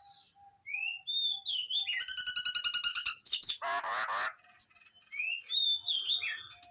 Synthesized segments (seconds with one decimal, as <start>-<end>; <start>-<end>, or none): 2.9-3.5